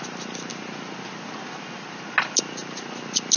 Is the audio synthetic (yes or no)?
no